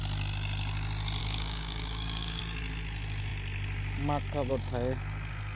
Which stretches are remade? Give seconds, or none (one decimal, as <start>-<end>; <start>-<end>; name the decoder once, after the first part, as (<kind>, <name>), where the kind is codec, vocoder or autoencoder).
1.2-2.4 (codec, DAC)

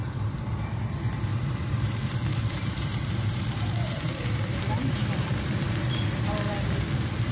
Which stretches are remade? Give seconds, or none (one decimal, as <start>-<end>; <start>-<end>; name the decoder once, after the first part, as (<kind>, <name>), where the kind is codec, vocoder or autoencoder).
0.0-0.8 (vocoder, BigVGAN v2); 1.3-5.7

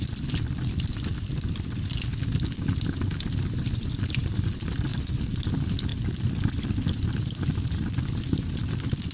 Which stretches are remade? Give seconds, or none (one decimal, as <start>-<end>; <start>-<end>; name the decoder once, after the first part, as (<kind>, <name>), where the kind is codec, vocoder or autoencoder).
0.0-2.1 (vocoder, BigVGAN v2); 3.8-4.9; 5.5-5.9; 6.5-9.1

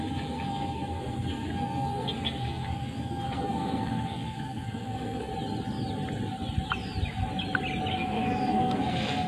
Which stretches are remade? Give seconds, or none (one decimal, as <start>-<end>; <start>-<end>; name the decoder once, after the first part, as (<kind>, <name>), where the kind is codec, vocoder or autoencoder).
0.0-5.3 (codec, SNAC); 7.9-9.3

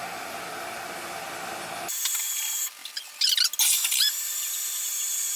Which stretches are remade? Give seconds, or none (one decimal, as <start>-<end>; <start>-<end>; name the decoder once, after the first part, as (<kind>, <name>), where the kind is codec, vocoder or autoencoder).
none

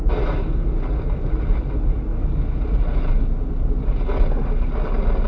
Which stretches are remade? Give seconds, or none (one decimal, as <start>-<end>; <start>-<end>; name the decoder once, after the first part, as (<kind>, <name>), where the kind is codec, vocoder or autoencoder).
none